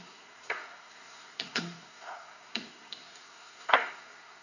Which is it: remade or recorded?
remade